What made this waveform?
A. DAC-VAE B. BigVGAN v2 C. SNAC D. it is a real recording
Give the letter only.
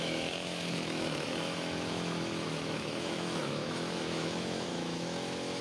A